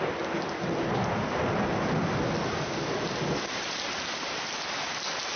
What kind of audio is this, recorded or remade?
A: recorded